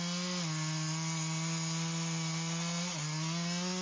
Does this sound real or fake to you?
real